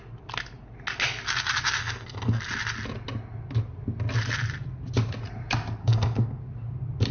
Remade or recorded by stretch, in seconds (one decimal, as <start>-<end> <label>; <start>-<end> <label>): 0.0-1.8 recorded; 1.8-2.4 remade; 2.4-5.8 recorded; 5.8-6.4 remade; 6.4-7.1 recorded